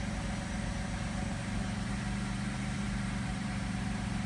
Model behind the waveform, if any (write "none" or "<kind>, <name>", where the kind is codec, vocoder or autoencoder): vocoder, BigVGAN v2